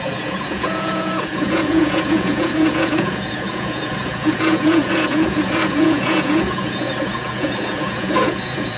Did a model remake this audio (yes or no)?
yes